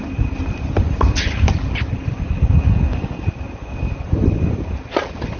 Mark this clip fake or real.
real